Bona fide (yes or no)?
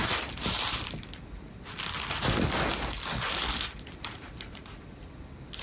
yes